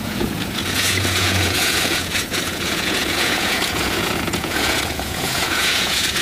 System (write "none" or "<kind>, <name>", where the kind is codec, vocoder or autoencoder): vocoder, Vocos